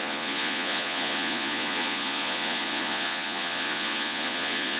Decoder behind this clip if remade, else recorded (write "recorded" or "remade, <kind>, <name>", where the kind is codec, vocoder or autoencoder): remade, vocoder, Vocos